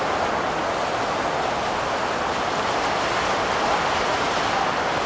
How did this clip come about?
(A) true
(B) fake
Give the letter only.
A